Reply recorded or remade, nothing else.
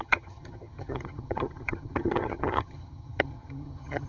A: remade